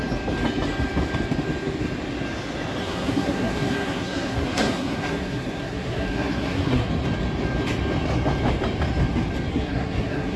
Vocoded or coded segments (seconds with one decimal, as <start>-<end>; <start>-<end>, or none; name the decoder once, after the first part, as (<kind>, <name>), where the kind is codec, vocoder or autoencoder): 2.8-6.9 (codec, SNAC); 9.5-10.4